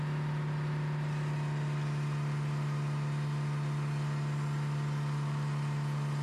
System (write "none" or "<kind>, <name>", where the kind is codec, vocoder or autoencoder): none